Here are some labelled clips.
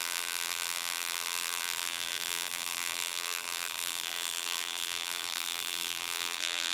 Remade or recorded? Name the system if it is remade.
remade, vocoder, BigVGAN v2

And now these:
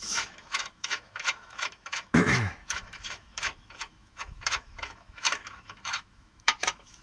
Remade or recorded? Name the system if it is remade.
remade, autoencoder, DAC-VAE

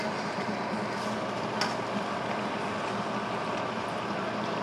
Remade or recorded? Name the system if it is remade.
recorded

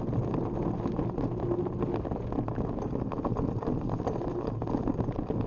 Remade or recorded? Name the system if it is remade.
recorded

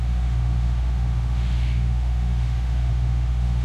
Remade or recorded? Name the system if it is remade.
remade, autoencoder, DAC-VAE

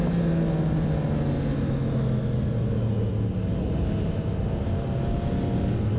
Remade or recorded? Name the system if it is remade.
recorded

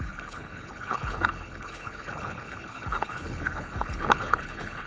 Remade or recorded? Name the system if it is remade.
remade, codec, HILCodec